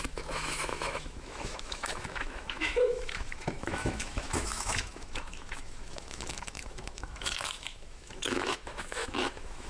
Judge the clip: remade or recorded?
remade